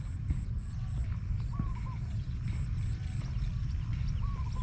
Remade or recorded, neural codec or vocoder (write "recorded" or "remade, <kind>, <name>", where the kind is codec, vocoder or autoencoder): recorded